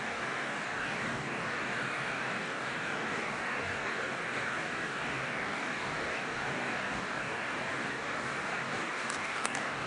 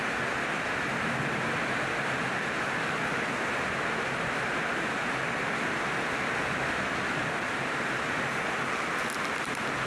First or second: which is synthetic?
first